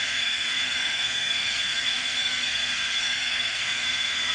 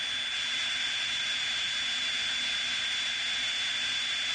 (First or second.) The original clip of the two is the second